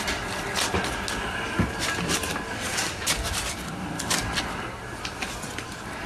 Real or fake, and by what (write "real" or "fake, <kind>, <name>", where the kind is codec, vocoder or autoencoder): real